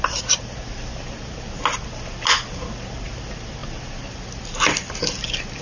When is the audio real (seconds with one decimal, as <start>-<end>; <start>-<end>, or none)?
0.0-5.6